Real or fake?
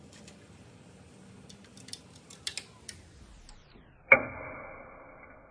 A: real